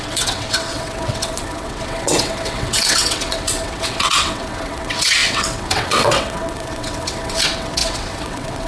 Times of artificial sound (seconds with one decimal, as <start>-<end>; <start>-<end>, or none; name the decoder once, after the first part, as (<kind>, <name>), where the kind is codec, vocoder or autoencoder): 0.0-8.7 (vocoder, WaveNeXt)